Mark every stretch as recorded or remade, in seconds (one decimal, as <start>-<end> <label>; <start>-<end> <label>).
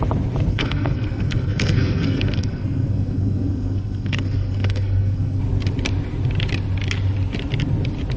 0.0-0.5 recorded; 0.5-5.4 remade; 5.4-8.2 recorded